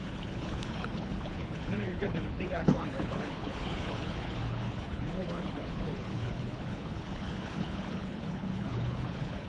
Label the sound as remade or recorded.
remade